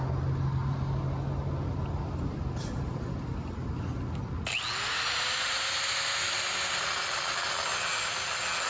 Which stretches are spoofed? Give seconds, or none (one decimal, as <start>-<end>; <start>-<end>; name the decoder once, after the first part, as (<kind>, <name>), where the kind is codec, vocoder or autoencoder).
none